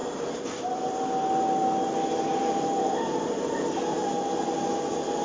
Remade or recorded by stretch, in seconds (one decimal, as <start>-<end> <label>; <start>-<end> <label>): 0.0-0.7 remade; 0.7-5.2 recorded